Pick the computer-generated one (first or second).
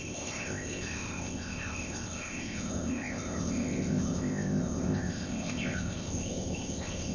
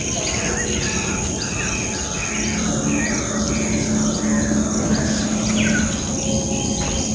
first